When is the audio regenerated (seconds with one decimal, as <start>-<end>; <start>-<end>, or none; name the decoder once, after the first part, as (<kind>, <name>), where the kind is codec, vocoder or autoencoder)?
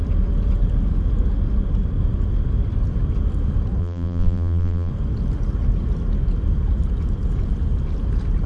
3.8-4.9 (vocoder, BigVGAN v2)